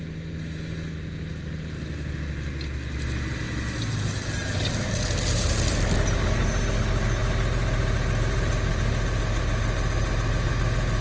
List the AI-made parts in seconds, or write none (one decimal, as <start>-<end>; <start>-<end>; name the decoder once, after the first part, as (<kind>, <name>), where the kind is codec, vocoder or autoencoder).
none